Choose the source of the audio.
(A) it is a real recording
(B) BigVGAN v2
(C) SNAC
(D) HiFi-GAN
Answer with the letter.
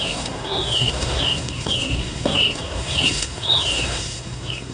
C